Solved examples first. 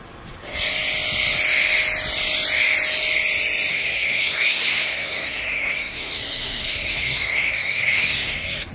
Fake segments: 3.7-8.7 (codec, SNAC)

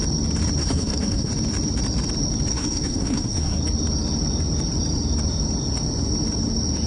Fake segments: 0.6-1.3 (codec, SNAC); 2.5-3.6

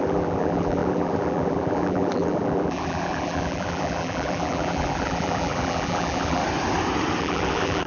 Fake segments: 0.0-6.4 (vocoder, BigVGAN v2); 7.2-7.9

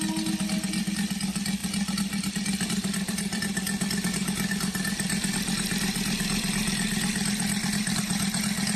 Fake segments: none